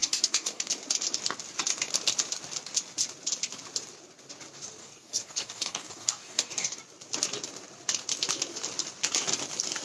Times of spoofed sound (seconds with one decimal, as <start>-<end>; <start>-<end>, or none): 0.0-0.7; 4.8-6.8